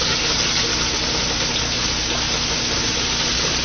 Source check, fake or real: real